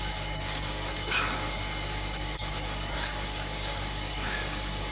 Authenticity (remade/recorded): remade